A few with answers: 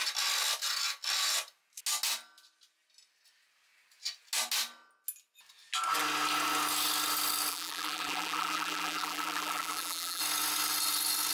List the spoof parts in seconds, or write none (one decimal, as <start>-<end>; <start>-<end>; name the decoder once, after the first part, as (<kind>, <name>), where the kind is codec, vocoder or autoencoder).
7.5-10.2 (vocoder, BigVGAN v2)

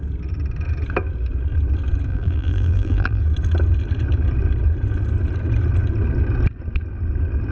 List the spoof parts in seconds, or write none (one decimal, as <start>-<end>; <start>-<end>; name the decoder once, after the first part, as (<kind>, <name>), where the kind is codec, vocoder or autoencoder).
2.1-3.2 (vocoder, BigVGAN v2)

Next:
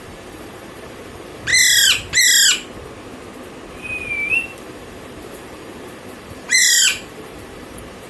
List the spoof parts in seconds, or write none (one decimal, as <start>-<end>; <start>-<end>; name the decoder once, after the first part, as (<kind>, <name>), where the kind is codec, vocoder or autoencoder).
0.0-1.5 (vocoder, BigVGAN v2); 4.3-8.1

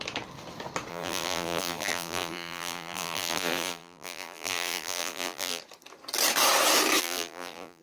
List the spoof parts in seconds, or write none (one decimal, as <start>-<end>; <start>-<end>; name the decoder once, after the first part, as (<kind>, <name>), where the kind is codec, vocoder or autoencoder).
0.9-5.6 (vocoder, BigVGAN v2); 7.0-7.8